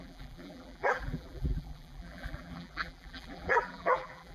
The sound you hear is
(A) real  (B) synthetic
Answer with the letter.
B